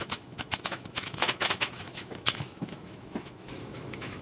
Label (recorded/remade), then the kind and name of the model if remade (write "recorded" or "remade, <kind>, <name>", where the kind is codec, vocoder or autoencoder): remade, autoencoder, DAC-VAE